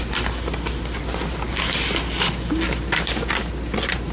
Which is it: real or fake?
real